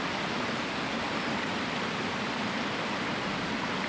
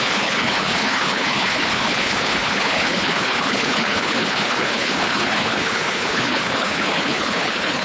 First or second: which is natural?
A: first